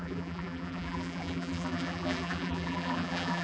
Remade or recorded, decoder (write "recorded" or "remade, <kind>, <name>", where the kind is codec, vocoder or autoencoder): remade, vocoder, BigVGAN v2